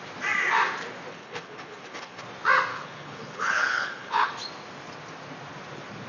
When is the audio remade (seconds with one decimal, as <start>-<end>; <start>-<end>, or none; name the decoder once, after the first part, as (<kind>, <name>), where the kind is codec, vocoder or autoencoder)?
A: 1.1-2.2 (codec, HILCodec); 2.7-4.3